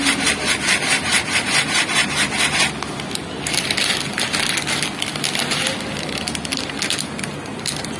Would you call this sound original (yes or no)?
yes